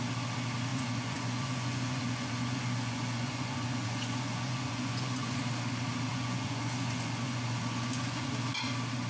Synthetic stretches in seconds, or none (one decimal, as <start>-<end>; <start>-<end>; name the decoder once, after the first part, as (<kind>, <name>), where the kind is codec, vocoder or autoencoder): 0.7-5.4 (vocoder, Vocos); 6.1-8.3